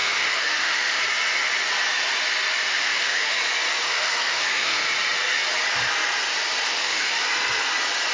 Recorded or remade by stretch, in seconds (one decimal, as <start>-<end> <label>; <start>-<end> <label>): 0.0-1.0 remade; 1.0-2.7 recorded; 2.7-3.4 remade; 3.4-3.8 recorded; 3.8-4.8 remade; 4.8-6.7 recorded; 6.7-7.2 remade; 7.2-8.1 recorded